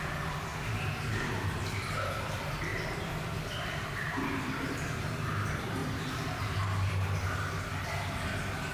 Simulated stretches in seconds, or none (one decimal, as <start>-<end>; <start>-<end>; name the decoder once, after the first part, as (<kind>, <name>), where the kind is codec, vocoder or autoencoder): 0.5-2.0 (vocoder, BigVGAN v2); 2.7-5.1; 5.8-6.9